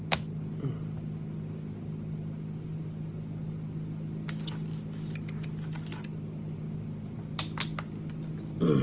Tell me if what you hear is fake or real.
real